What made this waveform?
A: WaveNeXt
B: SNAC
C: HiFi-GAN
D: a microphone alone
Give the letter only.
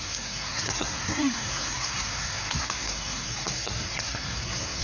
B